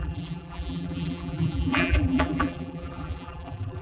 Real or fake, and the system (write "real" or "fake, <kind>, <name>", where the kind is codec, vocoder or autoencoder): fake, vocoder, BigVGAN v2